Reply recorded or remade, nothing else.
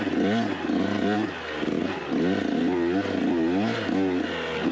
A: recorded